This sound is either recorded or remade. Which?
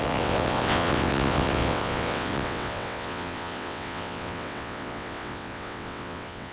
remade